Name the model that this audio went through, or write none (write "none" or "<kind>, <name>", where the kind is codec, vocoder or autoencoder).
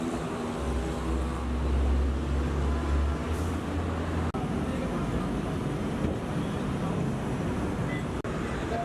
none